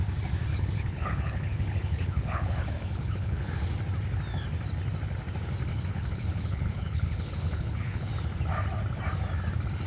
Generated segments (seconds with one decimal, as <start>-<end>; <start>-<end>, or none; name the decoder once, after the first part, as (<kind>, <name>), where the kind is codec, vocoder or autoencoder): 0.5-3.5 (codec, HILCodec); 5.7-8.1